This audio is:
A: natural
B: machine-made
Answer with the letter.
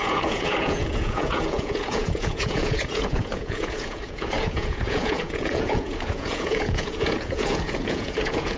B